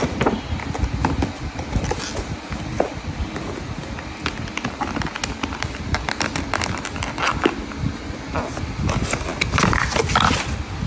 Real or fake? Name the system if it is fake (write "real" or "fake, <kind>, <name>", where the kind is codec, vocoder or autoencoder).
real